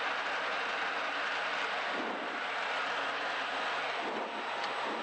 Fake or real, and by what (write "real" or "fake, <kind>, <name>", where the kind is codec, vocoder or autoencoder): real